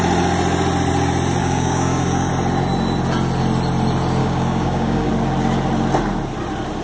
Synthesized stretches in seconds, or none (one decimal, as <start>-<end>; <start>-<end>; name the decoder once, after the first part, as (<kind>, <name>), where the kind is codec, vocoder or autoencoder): 1.4-2.3 (codec, DAC); 4.2-5.1